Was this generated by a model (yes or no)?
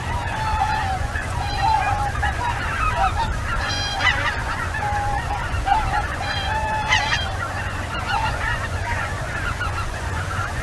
yes